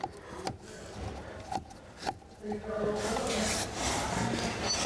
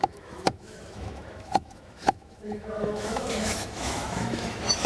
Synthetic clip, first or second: second